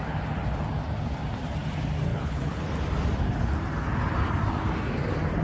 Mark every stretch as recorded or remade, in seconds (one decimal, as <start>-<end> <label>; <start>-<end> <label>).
0.0-2.1 recorded; 2.1-2.6 remade; 2.6-5.4 recorded